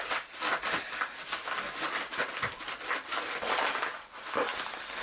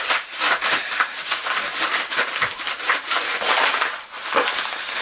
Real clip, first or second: first